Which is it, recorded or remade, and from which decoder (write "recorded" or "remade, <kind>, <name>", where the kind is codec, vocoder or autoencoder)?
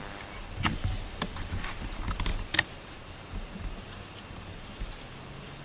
remade, vocoder, BigVGAN v2